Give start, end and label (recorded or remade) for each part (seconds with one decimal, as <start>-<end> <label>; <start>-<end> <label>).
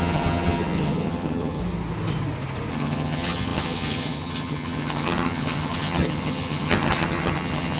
0.0-1.6 remade; 1.6-2.7 recorded; 2.7-7.8 remade